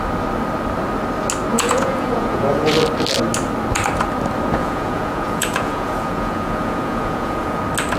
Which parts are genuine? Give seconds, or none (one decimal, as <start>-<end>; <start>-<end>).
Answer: 0.0-1.5; 2.7-4.6; 7.6-8.0